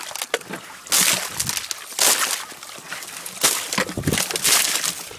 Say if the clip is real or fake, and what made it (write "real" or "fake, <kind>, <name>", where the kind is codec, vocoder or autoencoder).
real